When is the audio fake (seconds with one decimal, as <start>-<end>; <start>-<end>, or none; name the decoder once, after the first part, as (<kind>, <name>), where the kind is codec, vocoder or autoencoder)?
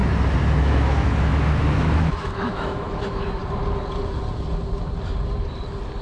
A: 0.6-3.4 (autoencoder, DAC-VAE)